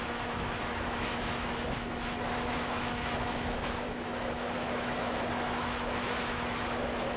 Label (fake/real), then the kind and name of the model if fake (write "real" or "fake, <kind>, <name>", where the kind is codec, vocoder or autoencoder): fake, autoencoder, DAC-VAE